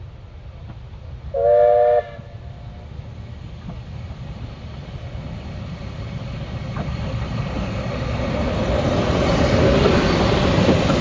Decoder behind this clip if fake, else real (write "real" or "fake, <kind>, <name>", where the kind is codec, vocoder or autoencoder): real